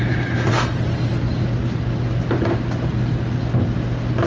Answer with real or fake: real